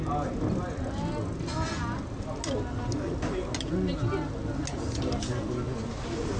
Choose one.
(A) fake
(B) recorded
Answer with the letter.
B